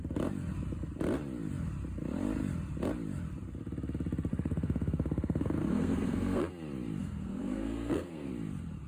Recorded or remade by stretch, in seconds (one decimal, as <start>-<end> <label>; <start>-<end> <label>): 0.0-4.3 recorded; 4.3-6.4 remade; 6.4-7.0 recorded; 7.0-8.3 remade; 8.3-8.9 recorded